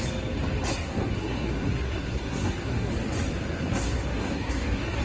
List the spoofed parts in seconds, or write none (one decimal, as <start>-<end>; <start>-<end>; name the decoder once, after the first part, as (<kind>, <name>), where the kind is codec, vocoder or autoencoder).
0.7-2.9 (codec, SNAC); 3.3-5.0